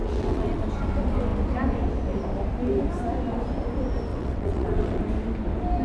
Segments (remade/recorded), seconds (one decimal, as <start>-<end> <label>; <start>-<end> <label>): 0.0-0.6 remade; 0.6-4.1 recorded; 4.1-5.0 remade; 5.0-5.8 recorded